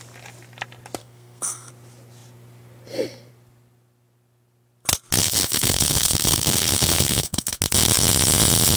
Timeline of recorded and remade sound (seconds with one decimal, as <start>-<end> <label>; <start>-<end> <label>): 0.0-1.0 recorded; 1.0-1.7 remade; 1.7-5.2 recorded; 5.2-7.6 remade; 7.6-8.8 recorded